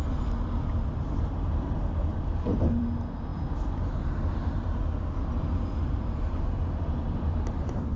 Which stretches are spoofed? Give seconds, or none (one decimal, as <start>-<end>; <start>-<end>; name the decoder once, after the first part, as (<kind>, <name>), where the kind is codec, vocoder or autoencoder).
none